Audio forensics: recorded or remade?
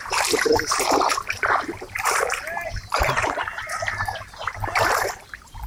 remade